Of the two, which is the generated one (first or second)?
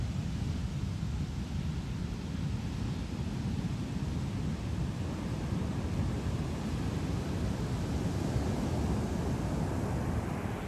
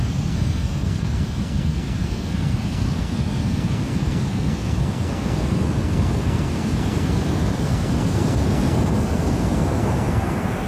second